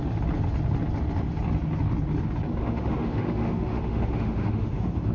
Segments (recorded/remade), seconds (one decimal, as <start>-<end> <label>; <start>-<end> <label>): 0.0-2.6 recorded; 2.6-5.1 remade